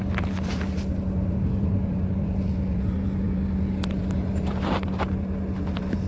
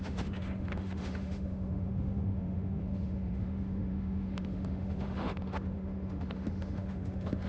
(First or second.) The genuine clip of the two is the first